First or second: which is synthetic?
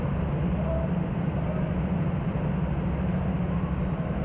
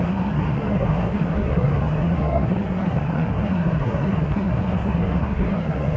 second